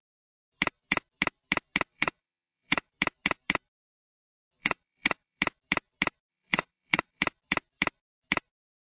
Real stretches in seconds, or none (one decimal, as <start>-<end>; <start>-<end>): 0.0-1.9; 2.9-4.6; 5.4-6.3; 7.2-8.8